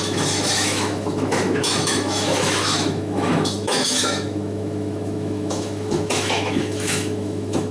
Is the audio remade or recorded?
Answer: remade